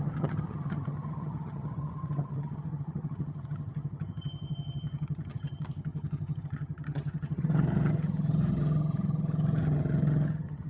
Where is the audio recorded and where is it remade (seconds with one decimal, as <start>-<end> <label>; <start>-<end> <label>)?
0.0-10.7 remade